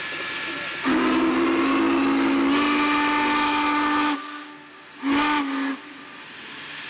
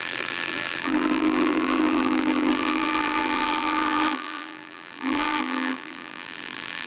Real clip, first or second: first